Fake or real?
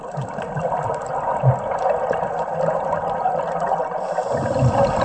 real